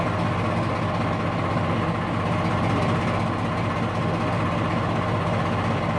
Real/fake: real